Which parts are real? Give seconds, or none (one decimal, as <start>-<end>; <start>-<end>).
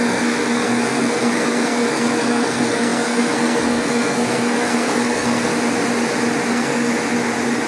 5.5-6.5; 6.9-7.7